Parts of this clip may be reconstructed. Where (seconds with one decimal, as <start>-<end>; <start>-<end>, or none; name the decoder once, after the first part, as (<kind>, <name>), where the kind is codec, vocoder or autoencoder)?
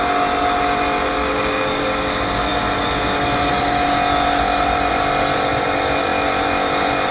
1.1-2.0 (codec, DAC)